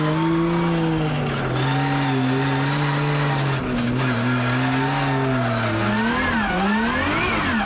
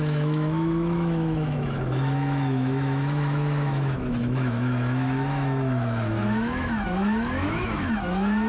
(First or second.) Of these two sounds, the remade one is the second